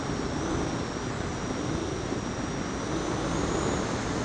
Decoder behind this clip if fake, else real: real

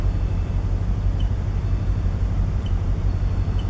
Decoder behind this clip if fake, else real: fake, vocoder, BigVGAN v2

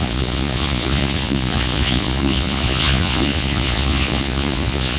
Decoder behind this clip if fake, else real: fake, vocoder, Vocos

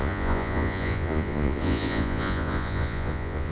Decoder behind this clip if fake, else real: fake, vocoder, Vocos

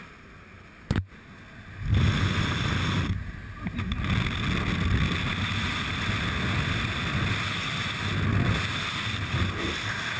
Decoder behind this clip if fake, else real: real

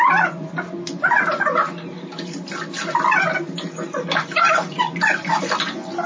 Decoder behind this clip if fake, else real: fake, vocoder, BigVGAN v2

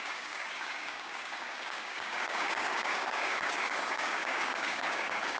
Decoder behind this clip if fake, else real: fake, codec, DAC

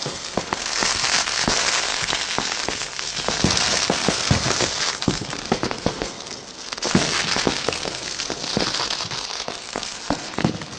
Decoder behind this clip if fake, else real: fake, codec, SNAC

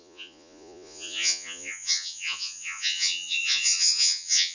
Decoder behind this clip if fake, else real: fake, vocoder, Vocos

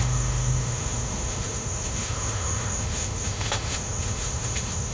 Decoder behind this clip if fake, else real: fake, autoencoder, DAC-VAE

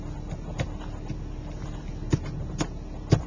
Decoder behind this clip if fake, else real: real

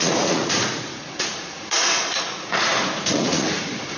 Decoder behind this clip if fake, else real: fake, vocoder, Vocos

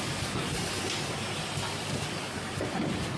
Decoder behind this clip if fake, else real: fake, vocoder, BigVGAN v2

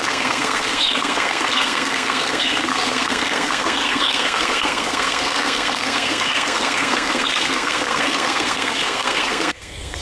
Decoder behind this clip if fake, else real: fake, codec, SNAC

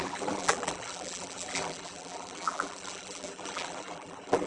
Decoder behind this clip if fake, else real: fake, vocoder, BigVGAN v2